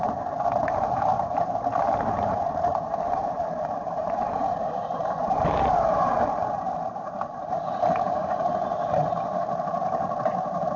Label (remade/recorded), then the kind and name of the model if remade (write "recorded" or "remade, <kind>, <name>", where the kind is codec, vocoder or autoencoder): remade, vocoder, BigVGAN v2